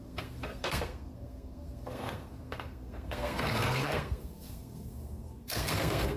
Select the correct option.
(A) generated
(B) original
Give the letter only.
A